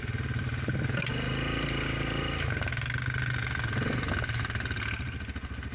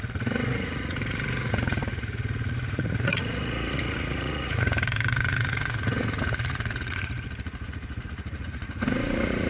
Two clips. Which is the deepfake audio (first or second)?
second